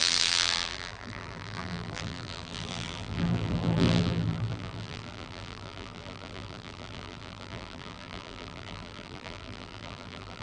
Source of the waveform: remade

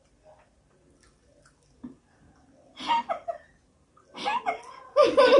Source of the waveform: recorded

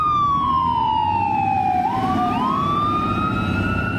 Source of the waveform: remade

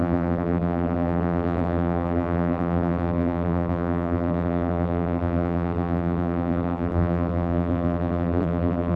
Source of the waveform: remade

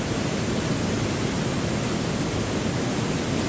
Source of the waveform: recorded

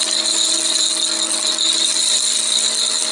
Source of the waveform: recorded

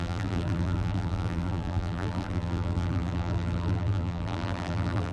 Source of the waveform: remade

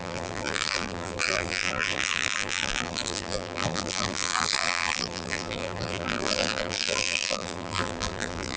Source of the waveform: remade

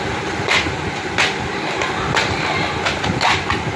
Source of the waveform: recorded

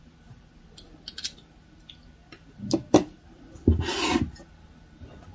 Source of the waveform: recorded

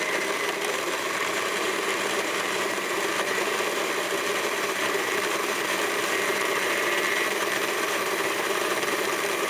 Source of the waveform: remade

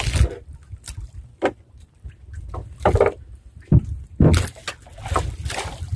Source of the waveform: recorded